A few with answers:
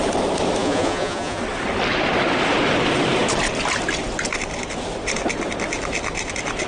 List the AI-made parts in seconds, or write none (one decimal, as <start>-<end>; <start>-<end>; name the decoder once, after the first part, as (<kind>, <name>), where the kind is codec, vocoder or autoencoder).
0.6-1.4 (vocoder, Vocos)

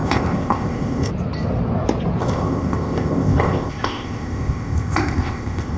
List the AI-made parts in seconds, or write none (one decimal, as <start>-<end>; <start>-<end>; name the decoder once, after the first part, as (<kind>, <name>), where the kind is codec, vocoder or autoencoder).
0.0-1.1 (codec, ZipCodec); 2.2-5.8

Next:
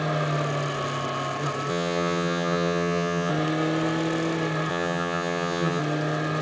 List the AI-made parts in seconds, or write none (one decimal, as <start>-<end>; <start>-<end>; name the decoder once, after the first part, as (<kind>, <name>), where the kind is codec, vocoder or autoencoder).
1.7-3.3 (vocoder, HiFi-GAN); 4.7-5.8

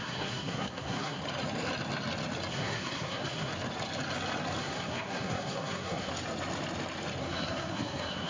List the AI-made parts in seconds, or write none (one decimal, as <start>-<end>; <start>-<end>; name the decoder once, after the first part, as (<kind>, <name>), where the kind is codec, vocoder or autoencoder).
0.0-1.2 (codec, SNAC); 2.5-3.5; 4.6-6.1; 7.2-8.3

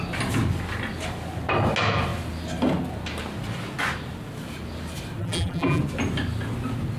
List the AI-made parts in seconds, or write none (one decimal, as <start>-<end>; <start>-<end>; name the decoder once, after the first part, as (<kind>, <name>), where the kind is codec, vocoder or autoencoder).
5.2-5.8 (vocoder, BigVGAN v2)

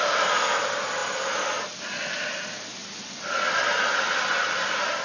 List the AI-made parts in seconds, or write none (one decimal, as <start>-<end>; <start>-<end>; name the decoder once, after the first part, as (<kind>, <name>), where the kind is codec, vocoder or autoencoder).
none